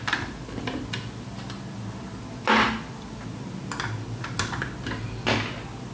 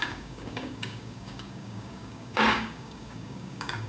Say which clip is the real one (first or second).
first